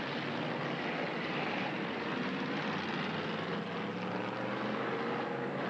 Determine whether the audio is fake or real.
real